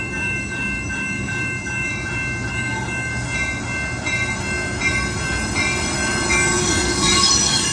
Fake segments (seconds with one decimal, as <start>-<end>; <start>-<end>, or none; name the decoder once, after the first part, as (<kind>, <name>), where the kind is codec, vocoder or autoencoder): 0.0-1.9 (codec, DAC); 2.5-3.1; 6.3-7.7

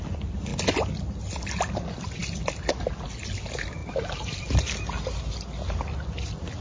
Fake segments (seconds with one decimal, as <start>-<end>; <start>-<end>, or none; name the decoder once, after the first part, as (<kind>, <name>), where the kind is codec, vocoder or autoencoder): none

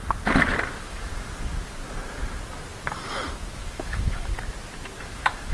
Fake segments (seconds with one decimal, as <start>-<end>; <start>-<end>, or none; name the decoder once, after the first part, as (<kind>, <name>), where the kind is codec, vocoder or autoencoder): 0.7-1.1 (autoencoder, DAC-VAE); 3.5-4.3; 5.0-5.5

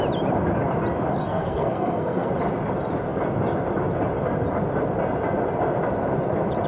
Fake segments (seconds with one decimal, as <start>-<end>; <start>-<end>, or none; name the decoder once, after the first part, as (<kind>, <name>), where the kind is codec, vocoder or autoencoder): 1.2-2.3 (codec, SNAC)

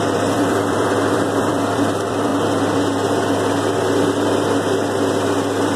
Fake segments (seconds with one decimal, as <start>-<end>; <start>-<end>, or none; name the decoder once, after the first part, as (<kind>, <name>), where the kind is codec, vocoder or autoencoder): 0.0-2.3 (vocoder, BigVGAN v2)

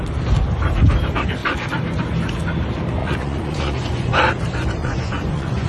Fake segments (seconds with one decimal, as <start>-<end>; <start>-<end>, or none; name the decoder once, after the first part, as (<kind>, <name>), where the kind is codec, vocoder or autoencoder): 3.0-4.3 (vocoder, Vocos); 4.8-5.7